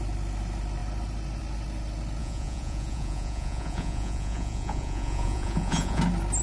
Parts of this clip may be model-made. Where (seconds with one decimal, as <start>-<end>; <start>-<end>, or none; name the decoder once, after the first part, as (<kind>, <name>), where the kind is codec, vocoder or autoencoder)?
2.2-6.0 (vocoder, Vocos)